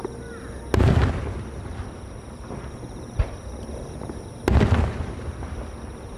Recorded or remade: recorded